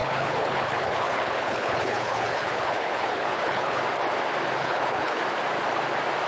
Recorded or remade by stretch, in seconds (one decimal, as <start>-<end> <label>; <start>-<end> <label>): 0.0-3.8 remade; 3.8-4.6 recorded; 4.6-5.2 remade; 5.2-6.3 recorded